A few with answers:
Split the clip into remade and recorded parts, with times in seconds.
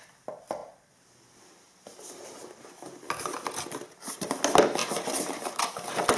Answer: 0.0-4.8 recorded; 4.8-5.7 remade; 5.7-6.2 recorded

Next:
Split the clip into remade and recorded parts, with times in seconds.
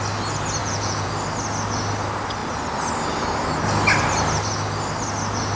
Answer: 0.0-0.6 recorded; 0.6-1.1 remade; 1.1-5.6 recorded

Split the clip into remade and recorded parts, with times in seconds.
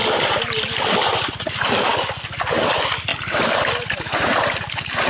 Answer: 0.0-5.1 recorded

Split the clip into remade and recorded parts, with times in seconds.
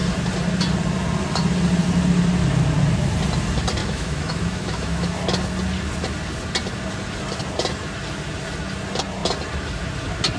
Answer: 0.0-3.8 recorded; 3.8-5.1 remade; 5.1-10.4 recorded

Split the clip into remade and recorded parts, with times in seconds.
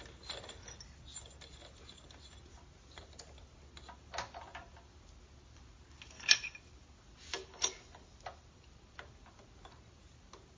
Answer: 0.0-7.4 recorded; 7.4-9.1 remade; 9.1-10.6 recorded